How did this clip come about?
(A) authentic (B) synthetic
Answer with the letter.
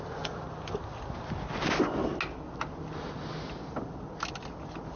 A